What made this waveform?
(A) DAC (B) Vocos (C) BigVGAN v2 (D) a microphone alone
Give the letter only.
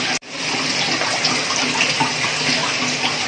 D